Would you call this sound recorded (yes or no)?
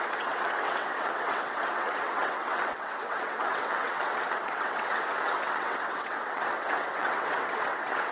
no